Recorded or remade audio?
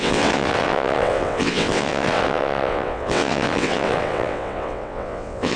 remade